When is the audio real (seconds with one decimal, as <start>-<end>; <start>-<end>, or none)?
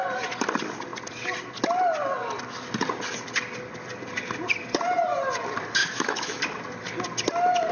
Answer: 0.0-5.8; 6.4-7.7